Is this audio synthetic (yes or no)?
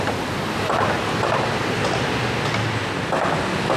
no